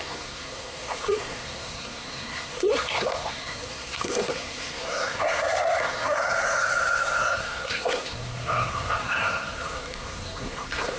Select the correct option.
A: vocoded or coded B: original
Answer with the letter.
A